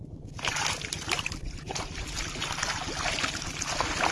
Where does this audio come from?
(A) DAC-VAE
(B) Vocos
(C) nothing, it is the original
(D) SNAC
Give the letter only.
C